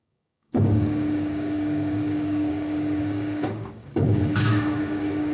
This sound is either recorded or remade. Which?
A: remade